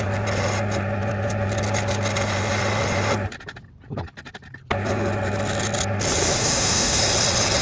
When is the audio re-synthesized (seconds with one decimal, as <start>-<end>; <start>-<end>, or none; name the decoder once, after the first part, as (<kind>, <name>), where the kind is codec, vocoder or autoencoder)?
6.4-7.0 (autoencoder, DAC-VAE)